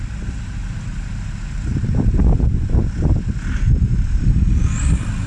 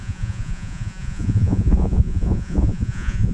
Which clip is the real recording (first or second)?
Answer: first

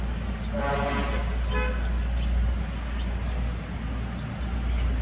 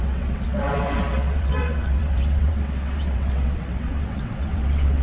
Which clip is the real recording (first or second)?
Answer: first